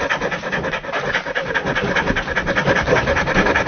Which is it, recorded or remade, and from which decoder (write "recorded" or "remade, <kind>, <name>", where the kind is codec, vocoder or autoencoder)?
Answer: recorded